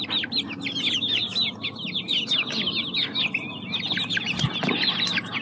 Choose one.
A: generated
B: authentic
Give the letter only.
B